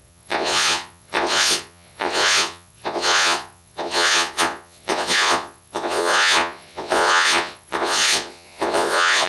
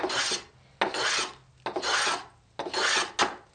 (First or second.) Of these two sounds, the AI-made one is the first